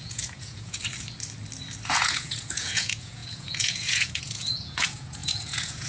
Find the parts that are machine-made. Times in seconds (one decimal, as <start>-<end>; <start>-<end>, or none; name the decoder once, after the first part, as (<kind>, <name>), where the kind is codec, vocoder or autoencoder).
0.0-0.8 (vocoder, Vocos); 1.9-5.9